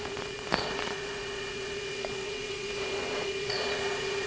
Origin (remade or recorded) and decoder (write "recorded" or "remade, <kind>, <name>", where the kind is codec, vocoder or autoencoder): remade, vocoder, Vocos